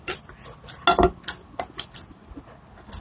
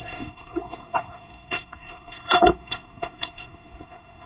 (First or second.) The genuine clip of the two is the first